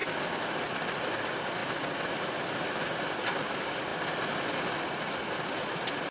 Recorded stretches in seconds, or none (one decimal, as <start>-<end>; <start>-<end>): 0.0-6.1